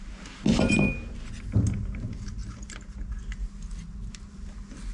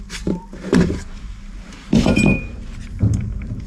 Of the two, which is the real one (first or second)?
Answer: first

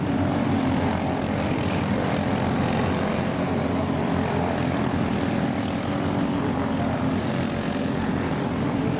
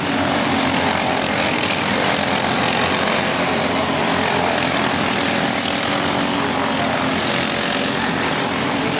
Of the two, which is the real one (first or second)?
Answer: second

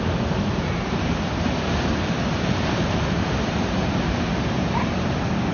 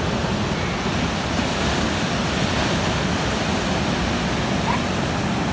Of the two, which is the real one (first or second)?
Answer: second